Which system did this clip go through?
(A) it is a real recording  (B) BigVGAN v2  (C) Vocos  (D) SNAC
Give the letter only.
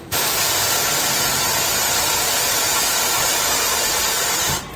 B